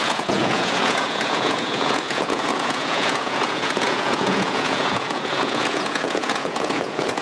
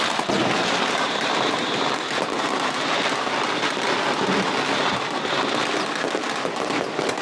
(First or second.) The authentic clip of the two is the second